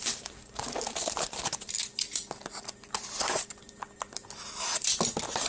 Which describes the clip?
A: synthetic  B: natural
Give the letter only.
B